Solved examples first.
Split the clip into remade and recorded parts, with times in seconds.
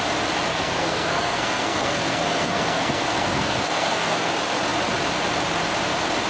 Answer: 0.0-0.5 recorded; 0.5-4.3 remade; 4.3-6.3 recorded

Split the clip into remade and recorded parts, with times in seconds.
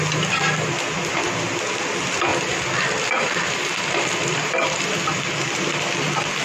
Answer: 0.0-2.3 recorded; 2.3-5.0 remade; 5.0-6.4 recorded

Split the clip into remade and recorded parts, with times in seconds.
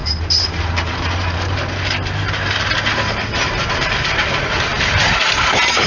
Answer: 0.0-5.9 remade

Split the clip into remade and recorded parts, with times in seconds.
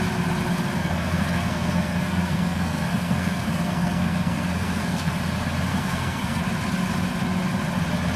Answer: 0.0-0.8 recorded; 0.8-5.1 remade; 5.1-5.7 recorded; 5.7-6.4 remade; 6.4-8.2 recorded